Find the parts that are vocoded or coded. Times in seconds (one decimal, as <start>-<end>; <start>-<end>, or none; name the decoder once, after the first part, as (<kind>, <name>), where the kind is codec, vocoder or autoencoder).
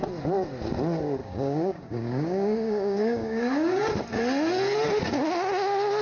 1.2-3.8 (codec, DAC)